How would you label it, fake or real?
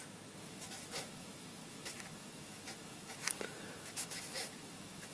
fake